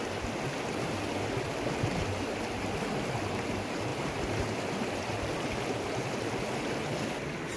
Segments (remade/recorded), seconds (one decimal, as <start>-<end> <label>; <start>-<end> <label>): 0.0-7.6 recorded